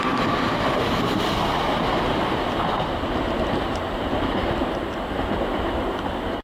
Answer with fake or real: real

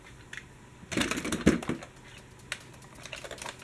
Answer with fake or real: real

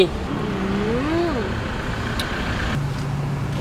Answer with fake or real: real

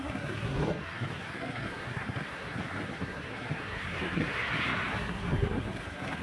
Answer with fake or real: fake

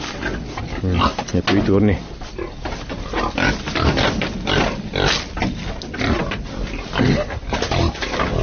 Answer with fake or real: real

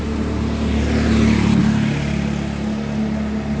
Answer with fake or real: real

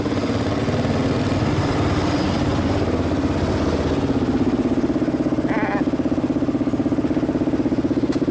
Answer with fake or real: real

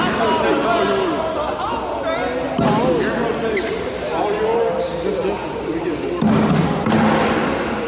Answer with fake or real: real